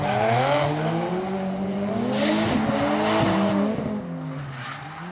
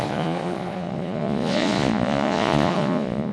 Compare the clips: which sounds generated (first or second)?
second